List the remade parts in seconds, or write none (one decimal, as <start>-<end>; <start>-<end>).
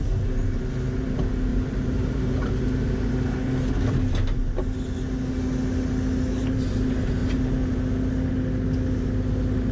1.5-2.3